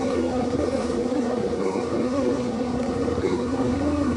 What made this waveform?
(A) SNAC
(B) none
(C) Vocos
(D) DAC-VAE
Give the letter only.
A